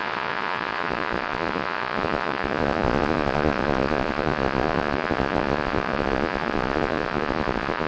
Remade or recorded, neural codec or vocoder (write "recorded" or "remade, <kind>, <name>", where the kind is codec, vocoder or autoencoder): remade, vocoder, Vocos